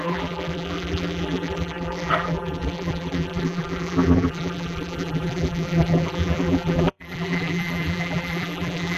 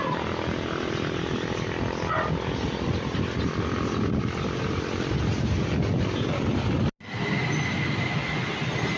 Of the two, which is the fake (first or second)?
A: first